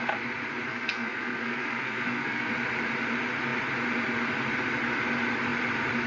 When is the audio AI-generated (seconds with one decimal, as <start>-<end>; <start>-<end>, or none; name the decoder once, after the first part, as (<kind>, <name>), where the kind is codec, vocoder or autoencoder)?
0.7-2.5 (codec, SNAC)

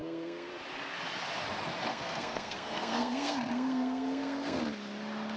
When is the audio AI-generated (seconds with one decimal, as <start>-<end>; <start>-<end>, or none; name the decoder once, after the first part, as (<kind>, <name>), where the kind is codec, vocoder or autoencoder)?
0.0-0.5 (codec, SNAC); 1.9-4.6

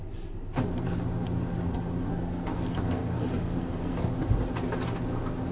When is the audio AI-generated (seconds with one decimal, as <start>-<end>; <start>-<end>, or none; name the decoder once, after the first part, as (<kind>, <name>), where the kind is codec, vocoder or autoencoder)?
2.1-4.1 (codec, SNAC)

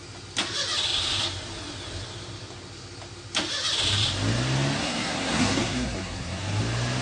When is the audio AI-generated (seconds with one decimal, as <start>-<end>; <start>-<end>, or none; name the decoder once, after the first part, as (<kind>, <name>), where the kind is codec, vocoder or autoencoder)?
4.8-6.6 (codec, SNAC)

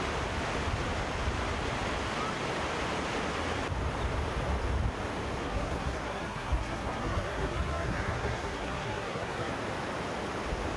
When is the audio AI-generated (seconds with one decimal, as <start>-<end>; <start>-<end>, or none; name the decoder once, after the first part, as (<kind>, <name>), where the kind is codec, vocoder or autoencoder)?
5.4-9.5 (codec, SNAC)

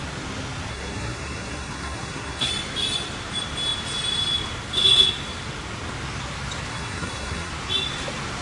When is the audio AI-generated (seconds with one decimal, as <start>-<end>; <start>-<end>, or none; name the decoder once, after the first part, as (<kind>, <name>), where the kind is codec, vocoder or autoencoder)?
0.7-2.5 (codec, SNAC); 6.7-7.5

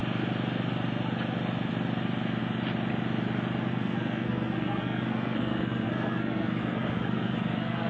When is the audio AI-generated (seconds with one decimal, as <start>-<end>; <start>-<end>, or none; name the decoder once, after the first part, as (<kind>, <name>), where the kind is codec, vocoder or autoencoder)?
3.7-7.9 (codec, SNAC)

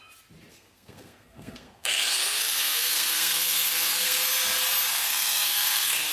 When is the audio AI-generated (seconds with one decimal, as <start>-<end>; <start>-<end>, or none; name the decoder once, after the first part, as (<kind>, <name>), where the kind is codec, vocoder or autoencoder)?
0.5-4.2 (codec, SNAC); 4.9-6.1